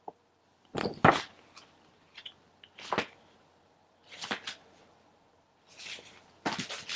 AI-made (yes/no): no